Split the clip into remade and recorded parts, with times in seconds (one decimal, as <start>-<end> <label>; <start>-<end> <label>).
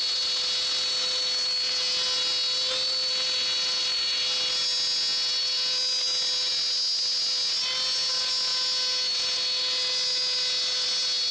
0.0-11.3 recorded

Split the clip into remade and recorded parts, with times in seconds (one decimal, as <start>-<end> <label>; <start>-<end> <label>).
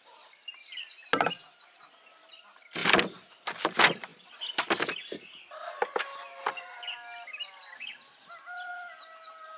0.0-9.6 recorded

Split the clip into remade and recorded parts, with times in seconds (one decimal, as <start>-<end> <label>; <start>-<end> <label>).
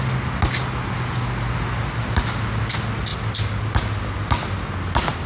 0.0-3.1 recorded; 3.1-3.8 remade; 3.8-5.3 recorded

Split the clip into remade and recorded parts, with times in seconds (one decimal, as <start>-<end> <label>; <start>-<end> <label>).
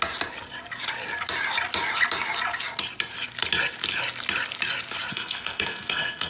0.0-5.1 recorded; 5.1-6.3 remade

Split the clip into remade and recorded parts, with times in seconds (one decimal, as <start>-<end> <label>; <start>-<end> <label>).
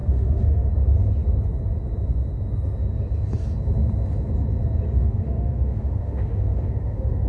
0.0-0.7 remade; 0.7-5.0 recorded; 5.0-7.3 remade